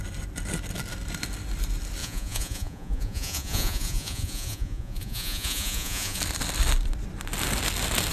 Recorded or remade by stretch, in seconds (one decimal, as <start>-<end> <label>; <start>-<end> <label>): 0.0-2.0 recorded; 2.0-6.2 remade; 6.2-8.1 recorded